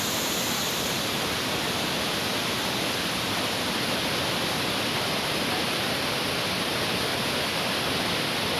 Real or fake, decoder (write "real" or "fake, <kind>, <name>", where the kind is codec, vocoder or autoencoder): real